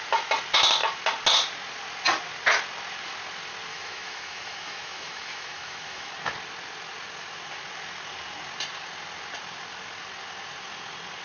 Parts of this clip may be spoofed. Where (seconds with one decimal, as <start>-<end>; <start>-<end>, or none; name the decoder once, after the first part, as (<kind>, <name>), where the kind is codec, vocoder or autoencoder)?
3.7-6.1 (autoencoder, DAC-VAE)